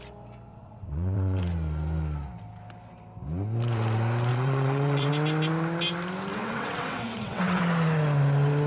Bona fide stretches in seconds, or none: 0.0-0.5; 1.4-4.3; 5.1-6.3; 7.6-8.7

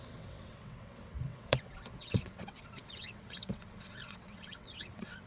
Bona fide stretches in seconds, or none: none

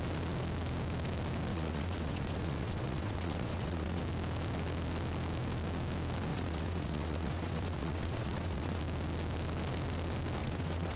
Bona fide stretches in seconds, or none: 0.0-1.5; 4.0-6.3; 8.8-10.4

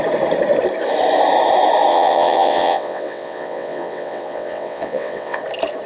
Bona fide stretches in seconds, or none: 0.0-1.9; 5.4-5.9

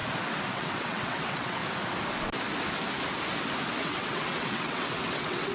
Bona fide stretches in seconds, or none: 0.0-0.5; 1.6-3.8

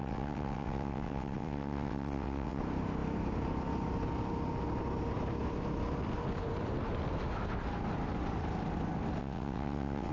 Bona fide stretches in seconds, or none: 2.6-9.2